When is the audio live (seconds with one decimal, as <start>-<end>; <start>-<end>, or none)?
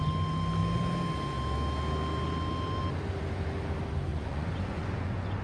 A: 0.0-4.1